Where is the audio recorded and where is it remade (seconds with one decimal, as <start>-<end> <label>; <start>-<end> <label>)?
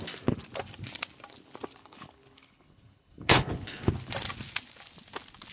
0.0-1.8 recorded; 1.8-3.9 remade; 3.9-5.5 recorded